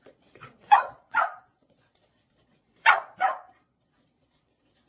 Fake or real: fake